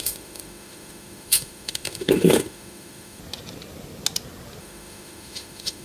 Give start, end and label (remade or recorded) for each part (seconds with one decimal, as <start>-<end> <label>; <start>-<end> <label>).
0.0-3.2 remade; 3.2-4.6 recorded; 4.6-5.8 remade